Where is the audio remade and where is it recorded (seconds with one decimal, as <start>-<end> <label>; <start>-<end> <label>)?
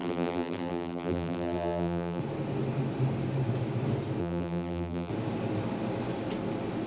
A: 0.0-2.2 remade; 2.2-4.2 recorded; 4.2-5.1 remade; 5.1-6.9 recorded